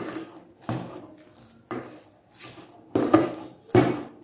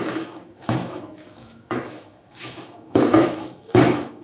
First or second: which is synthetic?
second